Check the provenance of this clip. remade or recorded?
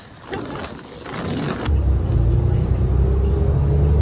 recorded